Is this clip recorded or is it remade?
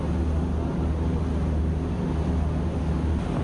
recorded